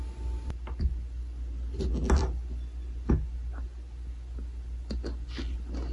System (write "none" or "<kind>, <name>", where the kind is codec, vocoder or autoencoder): none